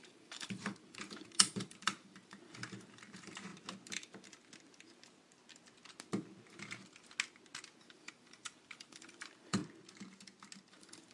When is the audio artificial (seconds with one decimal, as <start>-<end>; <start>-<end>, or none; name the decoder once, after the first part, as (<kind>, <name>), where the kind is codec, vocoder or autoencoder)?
0.0-3.5 (vocoder, BigVGAN v2); 7.8-9.6; 10.7-11.1